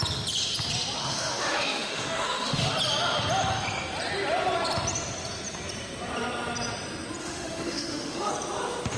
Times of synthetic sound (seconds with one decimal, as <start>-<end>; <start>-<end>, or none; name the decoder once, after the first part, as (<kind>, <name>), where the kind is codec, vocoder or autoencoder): 1.0-2.7 (autoencoder, DAC-VAE); 7.2-8.3